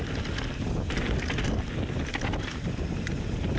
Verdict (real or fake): real